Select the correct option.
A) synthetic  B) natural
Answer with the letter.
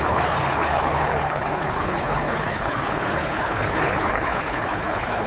A